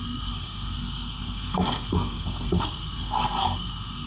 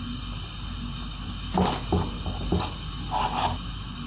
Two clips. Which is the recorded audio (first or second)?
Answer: second